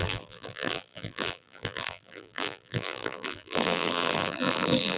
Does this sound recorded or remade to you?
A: remade